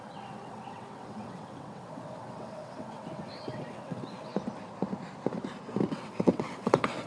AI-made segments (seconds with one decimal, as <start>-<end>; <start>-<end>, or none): 0.0-4.3; 5.9-7.1